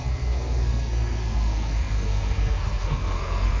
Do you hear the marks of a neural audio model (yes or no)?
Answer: yes